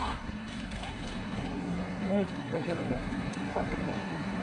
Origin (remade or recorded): remade